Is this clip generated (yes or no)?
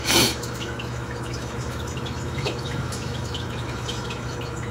yes